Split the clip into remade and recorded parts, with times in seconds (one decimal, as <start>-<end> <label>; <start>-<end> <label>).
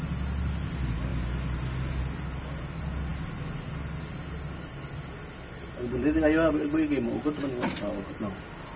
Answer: 0.0-8.8 recorded